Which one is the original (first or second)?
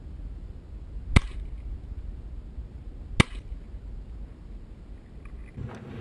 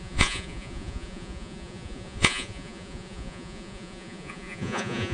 first